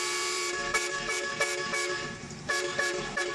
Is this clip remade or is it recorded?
remade